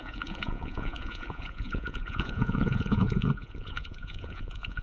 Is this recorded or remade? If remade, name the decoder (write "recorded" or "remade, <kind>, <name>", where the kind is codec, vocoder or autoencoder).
remade, vocoder, Vocos